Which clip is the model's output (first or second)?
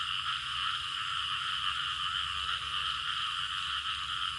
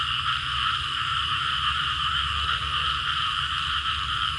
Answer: second